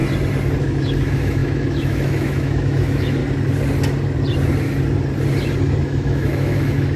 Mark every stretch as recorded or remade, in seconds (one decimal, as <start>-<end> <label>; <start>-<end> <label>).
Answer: 0.0-0.6 recorded; 0.6-3.2 remade; 3.2-5.8 recorded; 5.8-7.0 remade

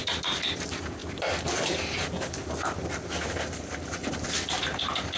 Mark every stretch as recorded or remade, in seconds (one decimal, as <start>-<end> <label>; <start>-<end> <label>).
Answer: 0.0-5.2 recorded

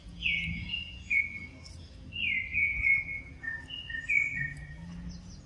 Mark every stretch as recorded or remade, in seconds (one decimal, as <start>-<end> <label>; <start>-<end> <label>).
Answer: 0.0-1.2 remade; 1.2-2.5 recorded; 2.5-3.4 remade; 3.4-5.5 recorded